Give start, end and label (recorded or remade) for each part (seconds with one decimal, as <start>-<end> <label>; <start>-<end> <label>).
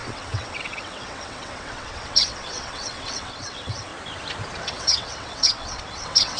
0.0-3.9 remade; 3.9-4.6 recorded; 4.6-6.4 remade